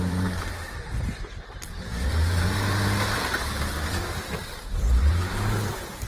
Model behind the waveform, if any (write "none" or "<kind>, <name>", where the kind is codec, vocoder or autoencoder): vocoder, BigVGAN v2